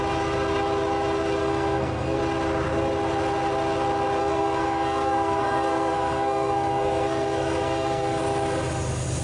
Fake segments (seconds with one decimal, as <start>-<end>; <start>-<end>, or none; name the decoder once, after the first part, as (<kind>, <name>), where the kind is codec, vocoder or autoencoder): 1.4-2.2 (codec, SNAC); 4.2-8.2